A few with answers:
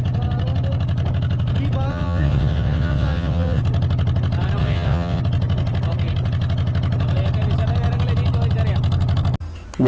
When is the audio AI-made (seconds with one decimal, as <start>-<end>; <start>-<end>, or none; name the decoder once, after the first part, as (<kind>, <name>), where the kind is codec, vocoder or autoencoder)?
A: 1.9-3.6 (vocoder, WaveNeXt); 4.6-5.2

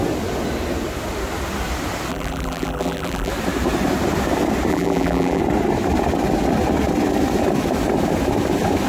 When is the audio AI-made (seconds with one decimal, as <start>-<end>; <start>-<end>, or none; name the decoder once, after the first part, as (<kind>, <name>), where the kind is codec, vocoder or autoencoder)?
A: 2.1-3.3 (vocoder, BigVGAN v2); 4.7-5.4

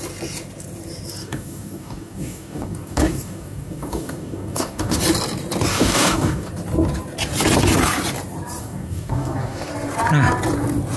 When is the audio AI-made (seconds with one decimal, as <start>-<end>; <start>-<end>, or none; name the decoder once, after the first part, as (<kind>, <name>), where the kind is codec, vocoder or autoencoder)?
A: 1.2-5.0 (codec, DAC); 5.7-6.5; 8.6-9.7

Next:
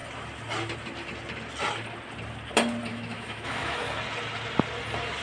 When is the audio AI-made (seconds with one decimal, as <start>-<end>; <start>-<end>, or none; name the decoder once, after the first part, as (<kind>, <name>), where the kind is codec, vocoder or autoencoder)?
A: 2.9-3.8 (autoencoder, DAC-VAE)

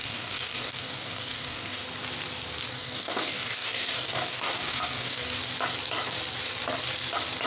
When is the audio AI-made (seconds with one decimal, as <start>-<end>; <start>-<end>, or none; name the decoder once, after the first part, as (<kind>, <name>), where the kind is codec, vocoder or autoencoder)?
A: 0.0-1.8 (codec, DAC); 2.7-5.4

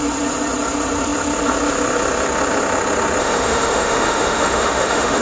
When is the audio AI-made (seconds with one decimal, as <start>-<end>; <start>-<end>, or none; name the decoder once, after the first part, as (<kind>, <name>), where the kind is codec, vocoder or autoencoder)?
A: 3.2-5.2 (autoencoder, DAC-VAE)

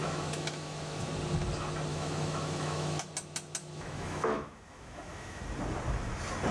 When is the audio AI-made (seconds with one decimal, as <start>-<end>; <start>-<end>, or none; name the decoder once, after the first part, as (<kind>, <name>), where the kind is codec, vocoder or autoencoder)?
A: 0.0-1.1 (autoencoder, DAC-VAE); 1.9-3.1; 3.6-5.4